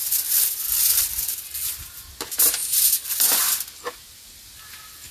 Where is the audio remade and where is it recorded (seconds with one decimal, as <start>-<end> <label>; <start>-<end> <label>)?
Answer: 0.0-1.2 remade; 1.2-5.1 recorded